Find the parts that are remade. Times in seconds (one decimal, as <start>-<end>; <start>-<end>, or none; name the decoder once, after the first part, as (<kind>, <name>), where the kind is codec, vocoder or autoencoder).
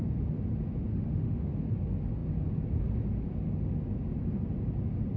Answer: 0.9-1.5 (autoencoder, DAC-VAE)